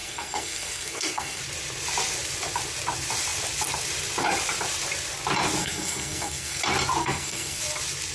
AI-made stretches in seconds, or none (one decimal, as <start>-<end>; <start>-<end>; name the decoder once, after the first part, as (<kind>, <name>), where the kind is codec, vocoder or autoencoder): 0.0-1.4 (codec, SNAC); 5.6-6.6; 7.0-7.6